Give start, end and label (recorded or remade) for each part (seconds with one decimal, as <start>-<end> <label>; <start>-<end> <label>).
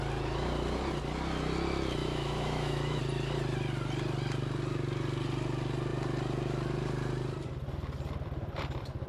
0.0-2.0 recorded; 2.0-3.0 remade; 3.0-9.1 recorded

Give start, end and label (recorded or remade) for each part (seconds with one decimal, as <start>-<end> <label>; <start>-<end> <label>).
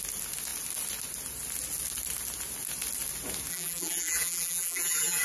0.0-3.5 recorded; 3.5-5.2 remade